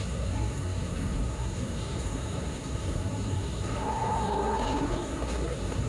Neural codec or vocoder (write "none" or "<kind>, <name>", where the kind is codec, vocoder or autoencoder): codec, SNAC